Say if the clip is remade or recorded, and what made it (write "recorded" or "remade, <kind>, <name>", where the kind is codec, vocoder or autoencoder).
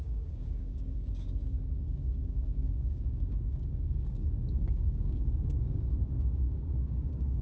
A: remade, codec, DAC